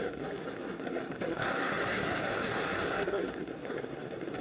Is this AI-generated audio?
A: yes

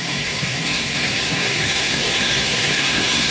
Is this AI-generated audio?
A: yes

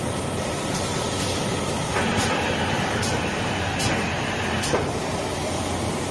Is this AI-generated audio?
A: yes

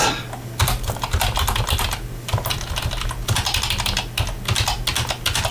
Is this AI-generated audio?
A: no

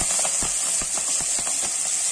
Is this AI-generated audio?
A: no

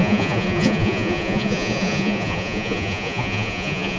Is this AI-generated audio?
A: yes